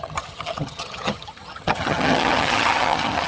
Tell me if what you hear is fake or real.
fake